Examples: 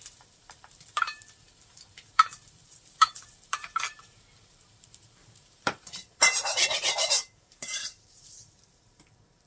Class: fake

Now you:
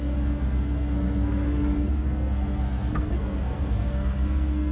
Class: fake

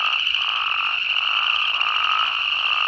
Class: real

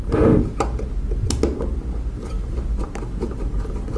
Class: real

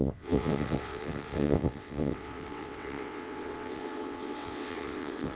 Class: fake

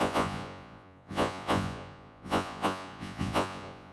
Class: fake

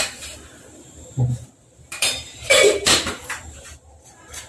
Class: fake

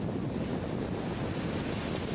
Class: real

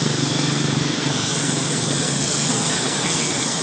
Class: fake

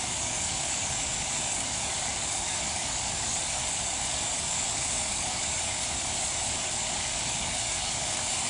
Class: fake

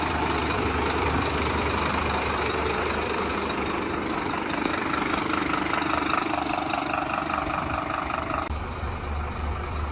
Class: fake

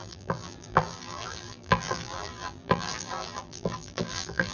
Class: fake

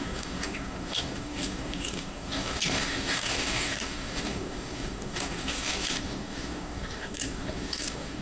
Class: fake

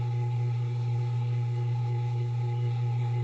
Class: fake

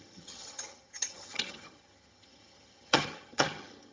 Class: fake